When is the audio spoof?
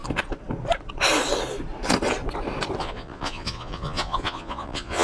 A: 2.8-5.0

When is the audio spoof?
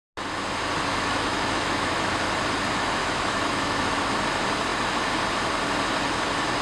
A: 0.9-2.1; 3.0-3.9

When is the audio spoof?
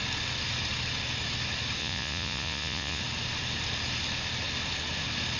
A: 1.8-3.0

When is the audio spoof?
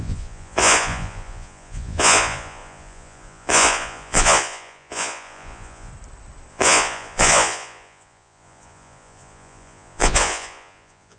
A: 0.0-5.9; 6.5-11.2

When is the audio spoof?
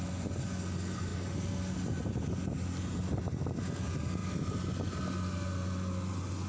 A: none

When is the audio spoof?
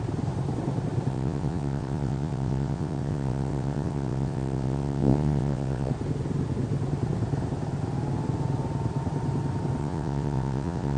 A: 1.1-5.9; 9.8-11.0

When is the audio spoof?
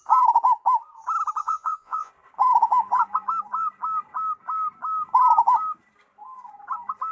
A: 1.4-2.1